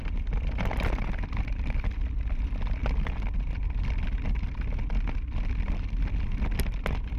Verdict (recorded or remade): recorded